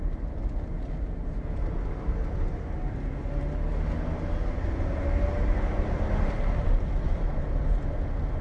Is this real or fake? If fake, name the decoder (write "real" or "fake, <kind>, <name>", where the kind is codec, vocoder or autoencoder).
real